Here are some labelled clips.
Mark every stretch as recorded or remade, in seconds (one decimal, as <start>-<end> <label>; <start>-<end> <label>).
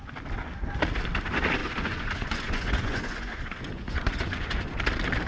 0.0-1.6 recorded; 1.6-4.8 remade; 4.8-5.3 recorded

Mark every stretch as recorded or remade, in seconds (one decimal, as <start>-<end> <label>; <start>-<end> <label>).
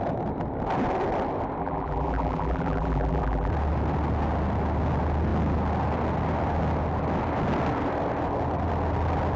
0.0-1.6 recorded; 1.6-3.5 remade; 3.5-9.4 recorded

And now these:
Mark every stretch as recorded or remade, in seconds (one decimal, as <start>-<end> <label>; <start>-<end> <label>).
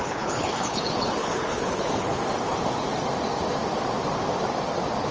0.0-2.2 remade; 2.2-5.1 recorded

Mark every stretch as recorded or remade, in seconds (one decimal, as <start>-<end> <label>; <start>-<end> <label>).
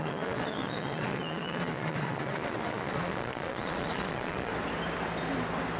0.0-4.5 remade; 4.5-5.8 recorded